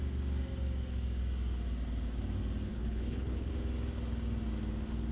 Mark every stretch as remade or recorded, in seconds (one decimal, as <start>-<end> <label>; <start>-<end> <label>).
0.0-2.7 recorded; 2.7-3.5 remade; 3.5-5.1 recorded